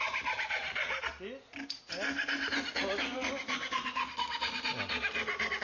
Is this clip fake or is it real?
real